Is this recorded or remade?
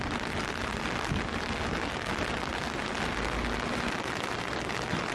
recorded